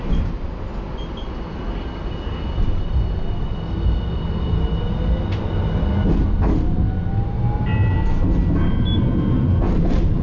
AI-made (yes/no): no